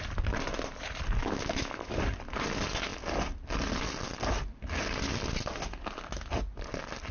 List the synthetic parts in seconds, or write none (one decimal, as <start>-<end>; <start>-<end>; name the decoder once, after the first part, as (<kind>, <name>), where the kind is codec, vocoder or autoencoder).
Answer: 1.2-1.9 (autoencoder, DAC-VAE)

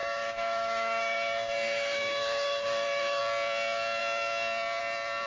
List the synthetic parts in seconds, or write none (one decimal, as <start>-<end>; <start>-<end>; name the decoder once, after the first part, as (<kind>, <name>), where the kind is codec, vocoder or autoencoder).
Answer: 0.0-3.2 (autoencoder, DAC-VAE)

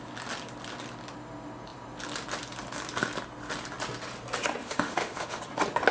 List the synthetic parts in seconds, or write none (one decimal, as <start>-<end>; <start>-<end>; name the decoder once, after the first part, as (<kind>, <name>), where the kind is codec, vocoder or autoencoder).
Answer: 4.6-5.4 (autoencoder, DAC-VAE)